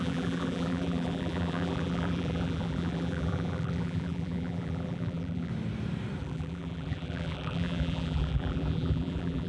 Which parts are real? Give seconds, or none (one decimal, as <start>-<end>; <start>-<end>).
5.5-6.2